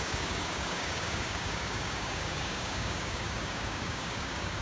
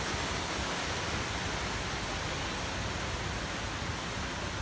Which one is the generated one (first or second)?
first